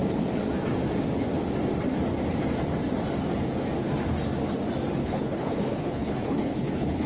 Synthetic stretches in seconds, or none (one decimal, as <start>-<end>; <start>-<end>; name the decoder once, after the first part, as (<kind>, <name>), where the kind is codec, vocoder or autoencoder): 5.0-7.1 (codec, HILCodec)